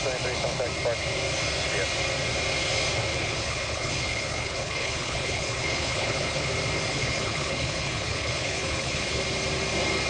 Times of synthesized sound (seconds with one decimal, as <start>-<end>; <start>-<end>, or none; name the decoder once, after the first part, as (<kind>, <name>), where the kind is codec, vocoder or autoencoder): 3.1-6.5 (codec, HILCodec); 6.9-9.2